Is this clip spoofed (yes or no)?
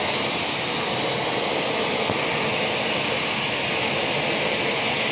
no